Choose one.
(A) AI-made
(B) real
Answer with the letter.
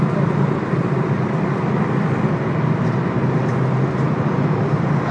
B